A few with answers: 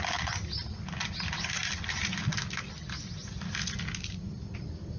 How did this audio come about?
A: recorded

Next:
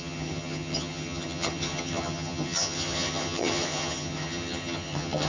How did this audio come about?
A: remade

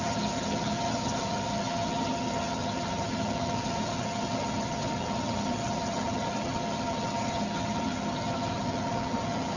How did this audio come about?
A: remade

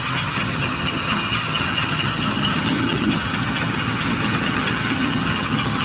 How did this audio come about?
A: remade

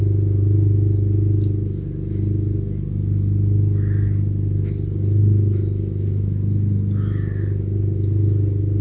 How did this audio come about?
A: recorded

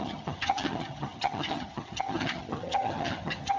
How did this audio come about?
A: remade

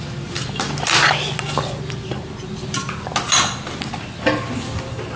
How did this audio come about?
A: recorded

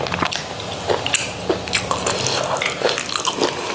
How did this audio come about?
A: recorded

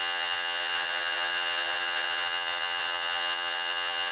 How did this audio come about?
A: remade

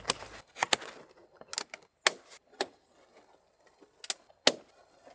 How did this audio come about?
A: recorded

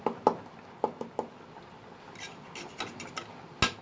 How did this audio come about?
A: recorded